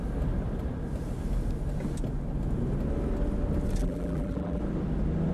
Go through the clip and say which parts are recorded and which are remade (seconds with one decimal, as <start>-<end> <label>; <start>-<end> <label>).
0.0-3.8 recorded; 3.8-4.6 remade; 4.6-5.3 recorded